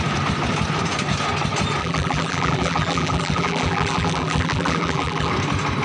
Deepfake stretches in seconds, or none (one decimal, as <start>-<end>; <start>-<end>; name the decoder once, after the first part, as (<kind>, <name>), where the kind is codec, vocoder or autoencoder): 1.8-5.3 (vocoder, BigVGAN v2)